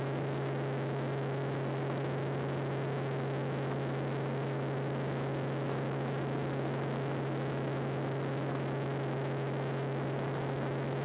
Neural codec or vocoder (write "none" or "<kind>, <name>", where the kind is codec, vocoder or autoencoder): none